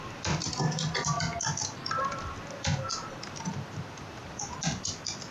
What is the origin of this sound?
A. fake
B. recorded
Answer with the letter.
B